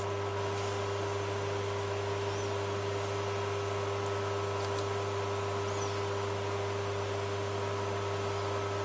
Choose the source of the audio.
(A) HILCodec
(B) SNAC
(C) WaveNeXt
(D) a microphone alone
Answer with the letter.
D